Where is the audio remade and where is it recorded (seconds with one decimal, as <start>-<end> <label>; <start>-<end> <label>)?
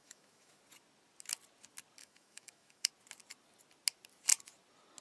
0.0-0.6 remade; 0.6-2.0 recorded; 2.0-2.9 remade; 2.9-5.0 recorded